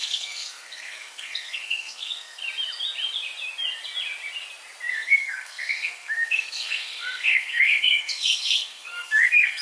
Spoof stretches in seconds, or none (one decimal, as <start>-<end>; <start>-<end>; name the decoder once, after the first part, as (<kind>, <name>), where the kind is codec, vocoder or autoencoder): 0.0-2.4 (codec, SNAC); 4.9-9.6